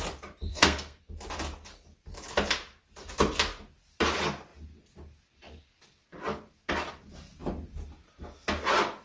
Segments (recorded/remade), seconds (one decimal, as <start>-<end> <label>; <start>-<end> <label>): 0.0-0.5 recorded; 0.5-1.0 remade; 1.0-9.0 recorded